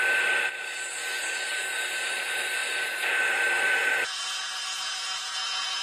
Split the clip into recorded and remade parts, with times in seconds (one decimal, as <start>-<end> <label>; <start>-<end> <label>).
0.0-5.8 remade